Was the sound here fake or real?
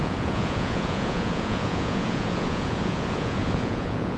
fake